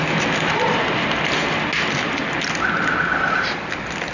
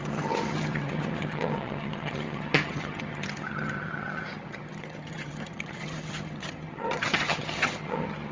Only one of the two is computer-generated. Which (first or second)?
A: second